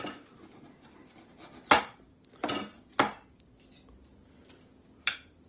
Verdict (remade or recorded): recorded